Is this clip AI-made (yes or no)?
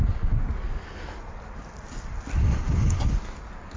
no